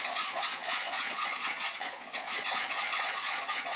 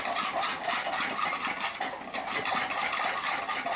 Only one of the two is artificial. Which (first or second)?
first